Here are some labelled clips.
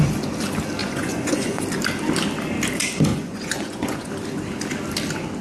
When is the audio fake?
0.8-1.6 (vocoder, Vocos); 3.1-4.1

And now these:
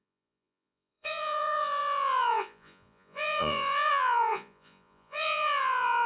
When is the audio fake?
0.0-6.1 (vocoder, Vocos)

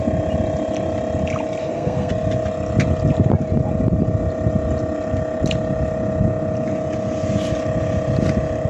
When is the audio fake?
1.6-2.1 (codec, SNAC)